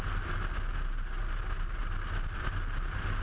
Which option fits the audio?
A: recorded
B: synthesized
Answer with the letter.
A